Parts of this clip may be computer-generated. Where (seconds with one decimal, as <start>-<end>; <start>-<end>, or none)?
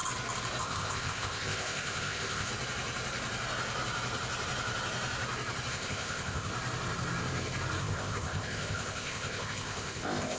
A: 0.6-2.5; 5.7-6.5; 7.8-10.4